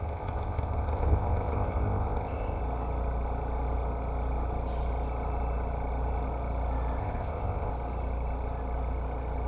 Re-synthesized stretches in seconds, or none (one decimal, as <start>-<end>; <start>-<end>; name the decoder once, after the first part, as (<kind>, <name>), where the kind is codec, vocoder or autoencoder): 0.0-2.6 (codec, ZipCodec); 7.0-7.7